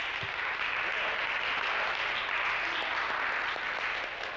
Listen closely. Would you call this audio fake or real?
real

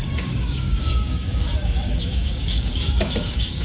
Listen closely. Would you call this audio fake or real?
fake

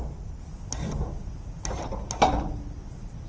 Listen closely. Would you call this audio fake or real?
real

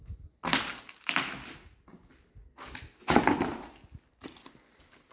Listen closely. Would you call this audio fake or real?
real